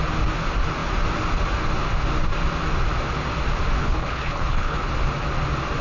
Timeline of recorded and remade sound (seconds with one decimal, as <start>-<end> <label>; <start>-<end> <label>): 0.0-3.8 recorded; 3.8-4.9 remade; 4.9-5.8 recorded